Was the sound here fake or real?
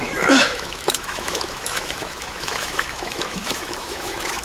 fake